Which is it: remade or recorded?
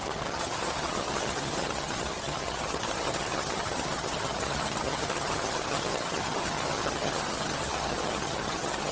remade